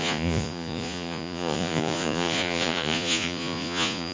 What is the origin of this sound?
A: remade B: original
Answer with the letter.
A